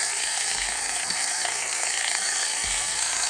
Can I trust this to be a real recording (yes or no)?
no